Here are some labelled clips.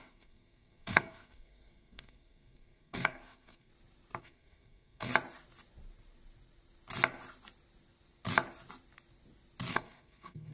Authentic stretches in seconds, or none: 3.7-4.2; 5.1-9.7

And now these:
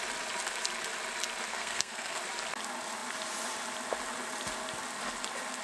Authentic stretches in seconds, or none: 0.0-1.5; 2.2-5.6

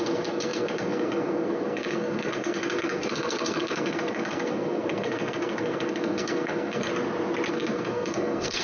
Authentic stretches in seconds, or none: 6.9-7.5

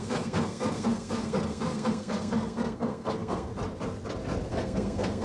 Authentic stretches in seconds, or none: 3.5-4.5

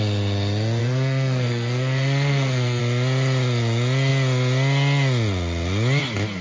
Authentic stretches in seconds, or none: 0.0-0.8; 2.8-6.4